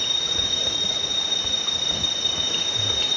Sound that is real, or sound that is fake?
real